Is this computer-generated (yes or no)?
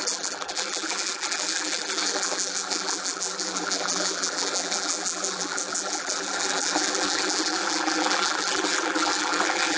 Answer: yes